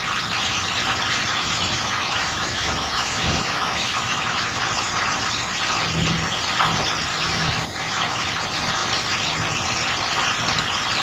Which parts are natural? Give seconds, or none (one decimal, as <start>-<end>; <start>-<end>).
0.0-1.3; 4.6-7.1; 8.3-11.0